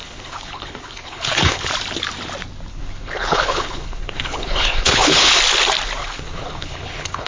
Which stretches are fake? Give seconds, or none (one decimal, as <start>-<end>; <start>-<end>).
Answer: 0.0-1.7; 2.7-5.4; 6.0-7.3

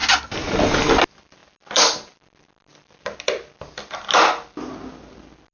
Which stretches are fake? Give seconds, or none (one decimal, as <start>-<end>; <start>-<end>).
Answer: none